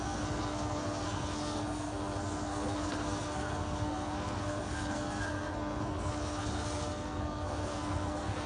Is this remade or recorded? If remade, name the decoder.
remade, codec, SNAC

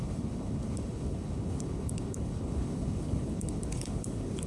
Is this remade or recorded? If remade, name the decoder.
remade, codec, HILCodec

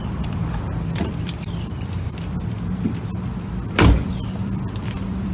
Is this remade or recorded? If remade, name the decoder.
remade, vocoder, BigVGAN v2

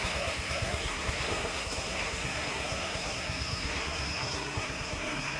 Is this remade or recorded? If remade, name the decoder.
remade, codec, SNAC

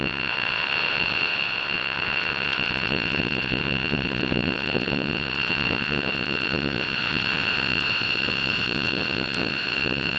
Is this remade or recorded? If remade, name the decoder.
remade, vocoder, WaveNeXt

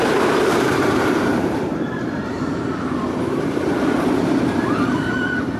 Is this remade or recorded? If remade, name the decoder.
remade, vocoder, BigVGAN v2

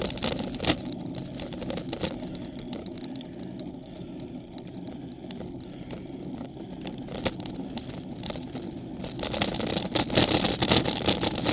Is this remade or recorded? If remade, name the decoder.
recorded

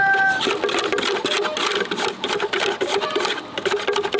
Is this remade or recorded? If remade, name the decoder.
recorded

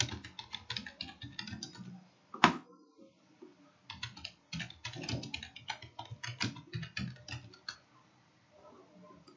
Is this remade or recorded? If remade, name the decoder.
recorded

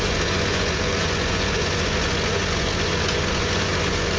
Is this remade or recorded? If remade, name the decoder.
remade, vocoder, Vocos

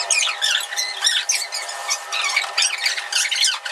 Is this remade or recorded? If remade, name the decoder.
recorded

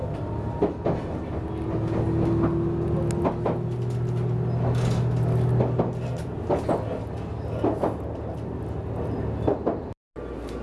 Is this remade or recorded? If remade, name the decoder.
recorded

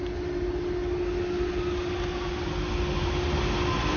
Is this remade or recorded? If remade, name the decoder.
recorded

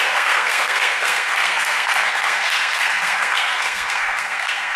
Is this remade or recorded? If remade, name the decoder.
remade, codec, SNAC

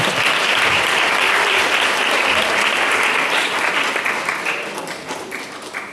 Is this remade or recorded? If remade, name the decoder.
remade, vocoder, BigVGAN v2